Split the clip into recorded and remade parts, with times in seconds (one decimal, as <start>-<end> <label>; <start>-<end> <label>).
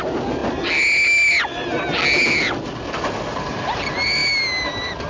0.0-5.1 recorded